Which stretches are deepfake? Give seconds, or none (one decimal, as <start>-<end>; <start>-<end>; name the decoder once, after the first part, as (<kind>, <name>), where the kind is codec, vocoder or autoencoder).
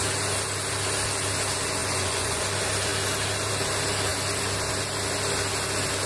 1.8-2.4 (vocoder, Vocos)